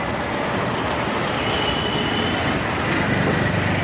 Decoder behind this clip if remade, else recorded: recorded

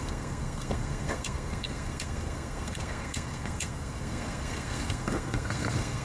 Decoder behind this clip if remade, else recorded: remade, codec, SNAC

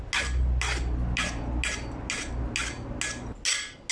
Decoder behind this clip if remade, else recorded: recorded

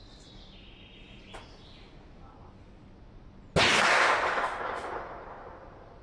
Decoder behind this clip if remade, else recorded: recorded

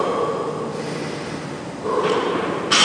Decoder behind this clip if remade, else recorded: recorded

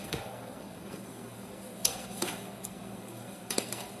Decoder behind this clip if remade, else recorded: remade, codec, SNAC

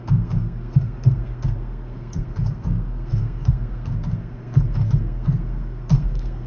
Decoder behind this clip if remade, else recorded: remade, codec, SNAC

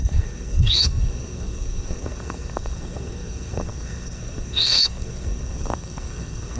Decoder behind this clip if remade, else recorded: remade, codec, SNAC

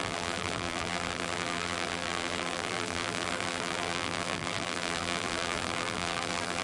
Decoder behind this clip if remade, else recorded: remade, vocoder, BigVGAN v2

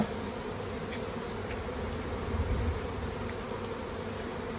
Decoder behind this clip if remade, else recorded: recorded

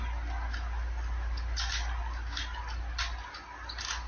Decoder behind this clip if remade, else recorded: recorded